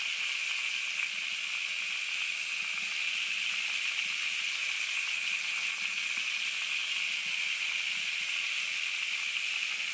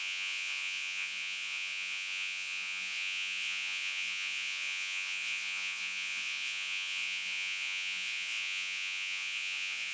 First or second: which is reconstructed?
second